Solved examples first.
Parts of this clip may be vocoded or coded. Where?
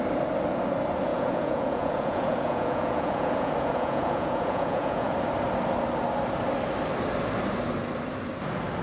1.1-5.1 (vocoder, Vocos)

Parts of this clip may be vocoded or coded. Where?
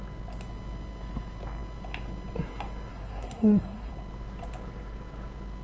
2.9-3.9 (codec, SNAC)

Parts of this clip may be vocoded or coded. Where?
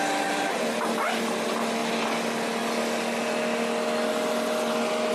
none